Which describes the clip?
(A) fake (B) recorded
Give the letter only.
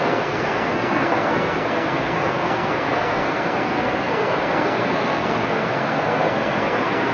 A